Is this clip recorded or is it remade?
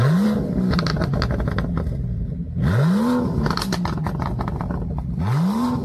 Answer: recorded